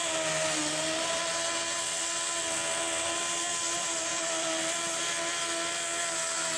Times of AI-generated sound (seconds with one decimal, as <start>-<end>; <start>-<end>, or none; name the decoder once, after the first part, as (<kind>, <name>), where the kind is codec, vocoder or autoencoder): 4.1-5.0 (vocoder, BigVGAN v2)

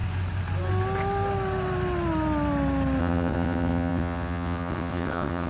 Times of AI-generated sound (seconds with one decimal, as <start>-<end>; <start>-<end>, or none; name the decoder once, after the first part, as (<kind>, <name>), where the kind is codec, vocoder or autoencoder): 3.0-5.5 (vocoder, WaveNeXt)

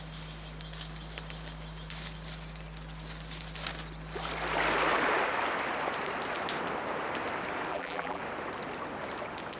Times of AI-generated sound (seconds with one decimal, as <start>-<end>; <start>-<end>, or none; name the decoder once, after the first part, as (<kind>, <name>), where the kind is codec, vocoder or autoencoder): 7.7-8.2 (vocoder, BigVGAN v2)

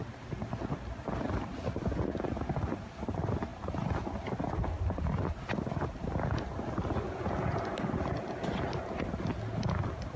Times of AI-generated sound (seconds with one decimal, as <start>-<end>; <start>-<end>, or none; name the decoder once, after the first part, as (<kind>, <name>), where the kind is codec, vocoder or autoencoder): none

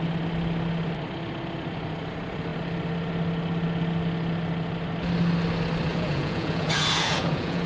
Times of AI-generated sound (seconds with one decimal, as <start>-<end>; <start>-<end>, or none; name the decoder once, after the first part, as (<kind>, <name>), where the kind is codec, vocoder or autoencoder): 5.9-7.7 (vocoder, Vocos)

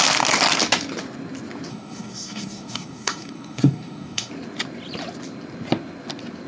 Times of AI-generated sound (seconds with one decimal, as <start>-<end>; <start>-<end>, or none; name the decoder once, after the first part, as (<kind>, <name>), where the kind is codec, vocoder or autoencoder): 1.7-4.3 (codec, SNAC)